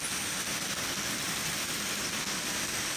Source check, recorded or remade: recorded